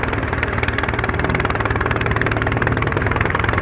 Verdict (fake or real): fake